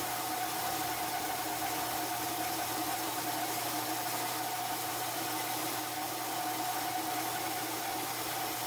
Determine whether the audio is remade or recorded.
recorded